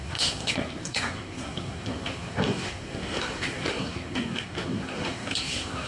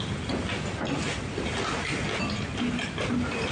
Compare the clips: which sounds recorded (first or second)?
second